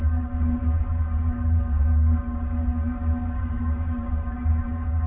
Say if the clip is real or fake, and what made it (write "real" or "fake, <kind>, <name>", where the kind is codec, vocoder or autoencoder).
fake, codec, DAC